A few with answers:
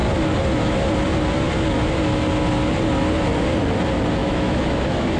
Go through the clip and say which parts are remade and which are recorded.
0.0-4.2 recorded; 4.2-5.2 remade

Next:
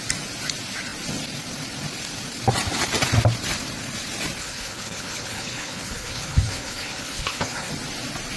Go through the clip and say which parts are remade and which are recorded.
0.0-4.4 recorded; 4.4-7.7 remade; 7.7-8.4 recorded

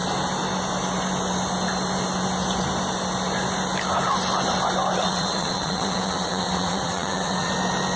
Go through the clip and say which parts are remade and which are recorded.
0.0-5.0 recorded; 5.0-7.5 remade; 7.5-8.0 recorded